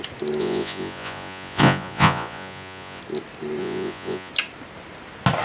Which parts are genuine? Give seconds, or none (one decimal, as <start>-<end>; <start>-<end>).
0.0-0.4; 3.0-3.6; 4.3-5.4